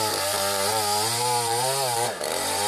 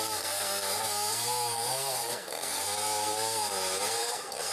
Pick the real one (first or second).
first